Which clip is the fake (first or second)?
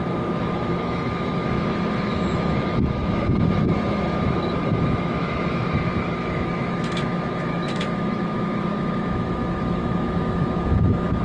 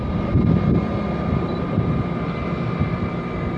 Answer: first